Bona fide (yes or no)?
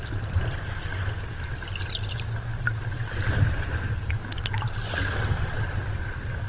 yes